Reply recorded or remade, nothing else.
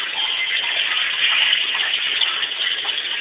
recorded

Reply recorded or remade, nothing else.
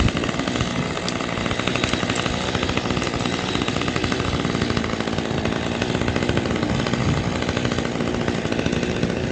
recorded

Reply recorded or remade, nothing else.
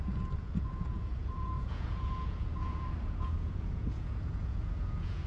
remade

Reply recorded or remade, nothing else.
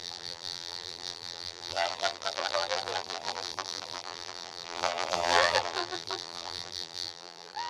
remade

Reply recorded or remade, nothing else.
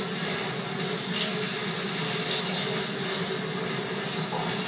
recorded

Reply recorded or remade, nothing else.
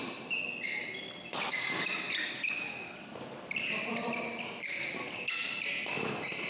recorded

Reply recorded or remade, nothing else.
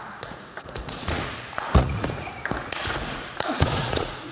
remade